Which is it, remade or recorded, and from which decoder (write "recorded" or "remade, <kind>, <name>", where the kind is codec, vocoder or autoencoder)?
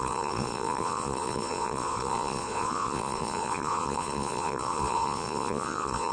remade, vocoder, Vocos